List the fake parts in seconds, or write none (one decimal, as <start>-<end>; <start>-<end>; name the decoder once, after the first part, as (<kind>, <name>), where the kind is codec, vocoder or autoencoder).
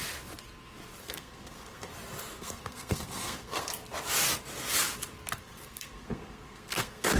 1.0-1.9 (codec, SNAC); 2.4-3.7; 5.4-7.2